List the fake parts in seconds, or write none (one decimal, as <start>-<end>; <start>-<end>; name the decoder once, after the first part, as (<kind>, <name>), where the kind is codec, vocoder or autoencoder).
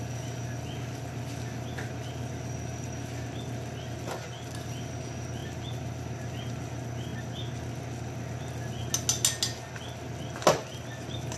none